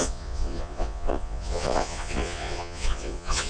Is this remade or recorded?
remade